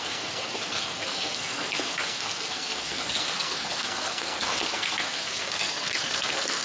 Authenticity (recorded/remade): remade